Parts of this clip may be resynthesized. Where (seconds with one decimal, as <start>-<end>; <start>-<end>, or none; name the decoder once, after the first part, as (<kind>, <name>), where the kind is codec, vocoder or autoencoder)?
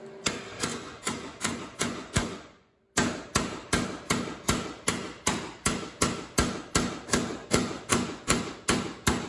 0.7-2.8 (vocoder, Vocos); 7.4-8.5